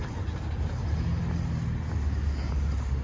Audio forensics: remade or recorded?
recorded